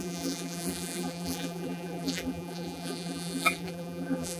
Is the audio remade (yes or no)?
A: yes